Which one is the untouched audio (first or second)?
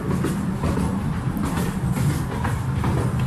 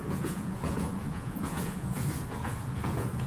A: first